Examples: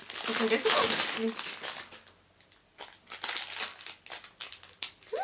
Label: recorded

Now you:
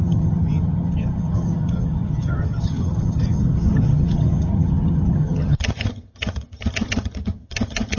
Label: remade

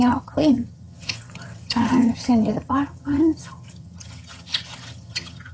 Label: remade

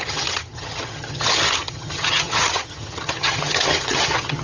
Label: remade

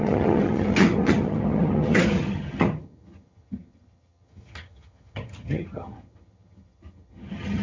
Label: remade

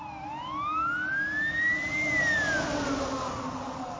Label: recorded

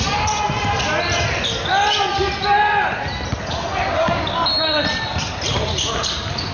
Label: recorded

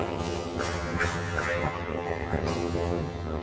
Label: remade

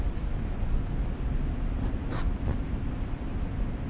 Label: recorded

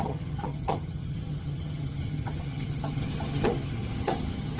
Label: remade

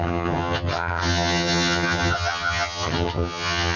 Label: remade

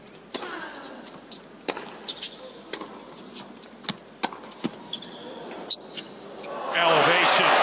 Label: recorded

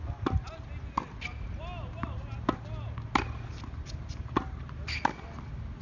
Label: recorded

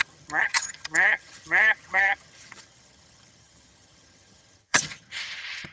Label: remade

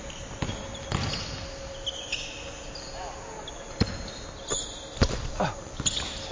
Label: recorded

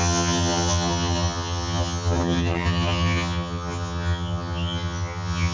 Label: remade